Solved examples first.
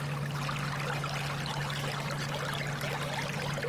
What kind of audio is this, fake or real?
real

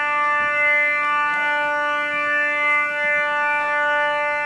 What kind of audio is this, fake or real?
real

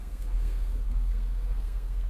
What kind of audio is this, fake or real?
fake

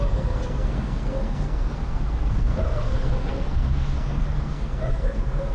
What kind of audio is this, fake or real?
fake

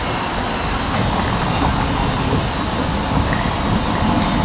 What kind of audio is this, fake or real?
real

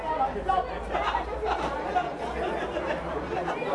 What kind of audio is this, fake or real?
real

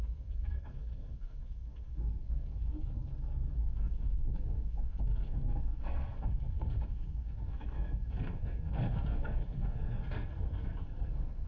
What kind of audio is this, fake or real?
fake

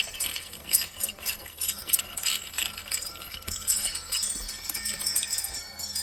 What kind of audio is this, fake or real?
fake